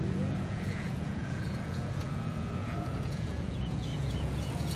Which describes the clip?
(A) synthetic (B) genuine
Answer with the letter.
A